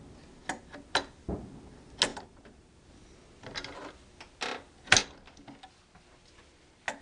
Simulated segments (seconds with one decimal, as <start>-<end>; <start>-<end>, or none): 2.1-2.9